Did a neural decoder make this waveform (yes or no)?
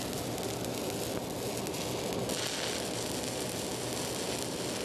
no